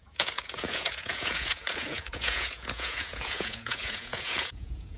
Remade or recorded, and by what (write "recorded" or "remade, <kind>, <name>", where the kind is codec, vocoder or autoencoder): remade, vocoder, Vocos